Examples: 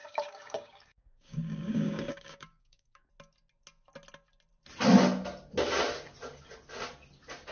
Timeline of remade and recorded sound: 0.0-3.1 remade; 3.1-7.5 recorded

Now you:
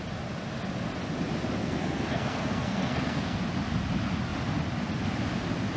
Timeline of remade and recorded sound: 0.0-1.6 recorded; 1.6-3.4 remade; 3.4-5.8 recorded

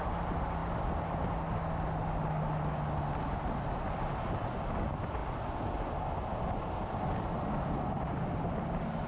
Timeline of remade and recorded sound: 0.0-9.1 recorded